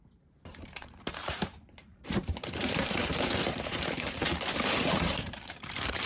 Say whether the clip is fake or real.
fake